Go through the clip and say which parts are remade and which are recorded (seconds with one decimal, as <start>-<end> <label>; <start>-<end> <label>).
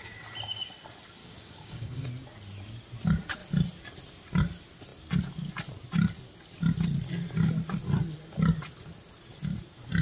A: 0.0-1.2 recorded; 1.2-2.1 remade; 2.1-10.0 recorded